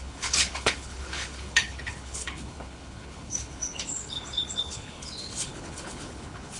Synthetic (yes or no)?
yes